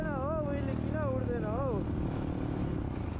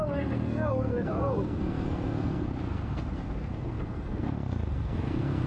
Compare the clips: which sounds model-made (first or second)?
second